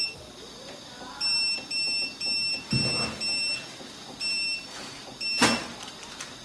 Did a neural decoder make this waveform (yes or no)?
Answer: no